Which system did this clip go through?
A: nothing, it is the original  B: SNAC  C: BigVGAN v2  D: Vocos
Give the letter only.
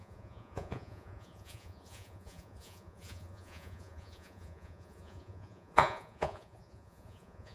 D